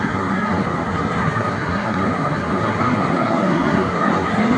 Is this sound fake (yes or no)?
yes